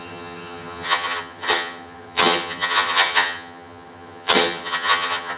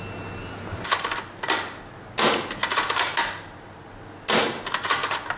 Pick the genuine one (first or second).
second